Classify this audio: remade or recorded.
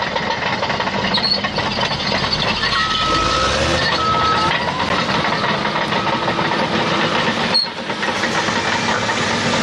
recorded